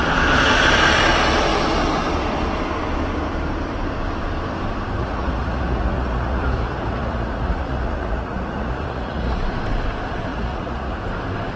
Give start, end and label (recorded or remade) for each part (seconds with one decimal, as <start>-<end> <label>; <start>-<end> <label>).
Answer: 0.0-5.0 recorded; 5.0-9.4 remade; 9.4-10.3 recorded; 10.3-11.0 remade; 11.0-11.6 recorded